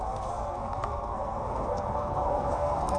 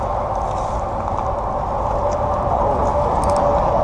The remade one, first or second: first